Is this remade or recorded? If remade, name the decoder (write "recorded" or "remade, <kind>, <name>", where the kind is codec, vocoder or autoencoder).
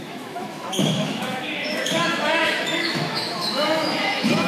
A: remade, autoencoder, DAC-VAE